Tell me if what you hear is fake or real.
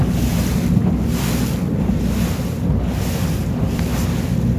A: real